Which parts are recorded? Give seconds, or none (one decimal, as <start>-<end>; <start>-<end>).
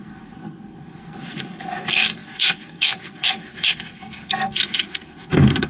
none